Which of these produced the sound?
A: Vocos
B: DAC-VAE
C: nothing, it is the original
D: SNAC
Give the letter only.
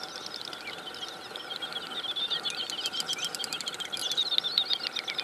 C